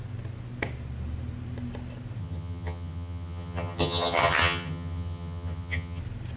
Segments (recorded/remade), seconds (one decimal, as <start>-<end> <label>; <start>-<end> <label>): 0.0-2.2 recorded; 2.2-6.0 remade; 6.0-6.4 recorded